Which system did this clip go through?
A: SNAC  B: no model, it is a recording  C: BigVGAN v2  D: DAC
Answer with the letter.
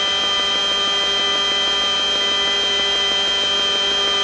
B